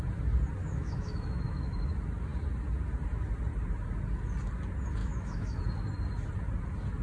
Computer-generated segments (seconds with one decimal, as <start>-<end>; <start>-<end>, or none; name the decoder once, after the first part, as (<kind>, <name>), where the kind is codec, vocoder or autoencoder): 0.6-1.9 (autoencoder, DAC-VAE); 5.0-5.6